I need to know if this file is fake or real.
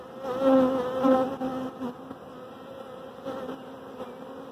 real